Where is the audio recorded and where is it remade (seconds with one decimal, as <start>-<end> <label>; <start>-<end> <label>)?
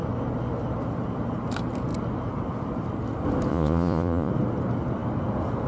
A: 0.0-3.5 recorded; 3.5-4.3 remade; 4.3-5.7 recorded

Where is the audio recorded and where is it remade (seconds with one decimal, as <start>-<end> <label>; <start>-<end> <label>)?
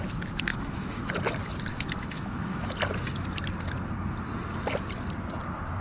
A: 0.0-0.5 recorded; 0.5-1.1 remade; 1.1-1.7 recorded; 1.7-2.7 remade; 2.7-5.8 recorded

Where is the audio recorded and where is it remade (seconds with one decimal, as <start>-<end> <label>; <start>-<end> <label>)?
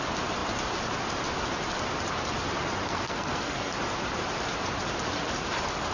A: 0.0-2.8 recorded; 2.8-3.7 remade; 3.7-5.9 recorded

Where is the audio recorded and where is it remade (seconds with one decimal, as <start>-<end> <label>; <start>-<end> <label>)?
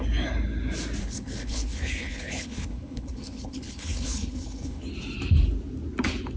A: 0.0-1.0 recorded; 1.0-4.8 remade; 4.8-6.4 recorded